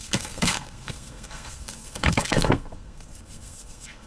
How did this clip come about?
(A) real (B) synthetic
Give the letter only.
B